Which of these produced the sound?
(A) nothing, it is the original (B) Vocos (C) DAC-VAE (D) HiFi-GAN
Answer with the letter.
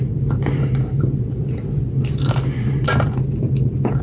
A